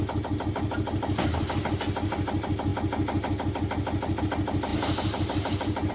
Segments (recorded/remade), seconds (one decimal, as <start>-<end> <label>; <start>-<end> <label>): 0.0-4.7 recorded; 4.7-5.9 remade